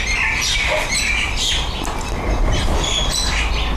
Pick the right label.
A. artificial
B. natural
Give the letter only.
B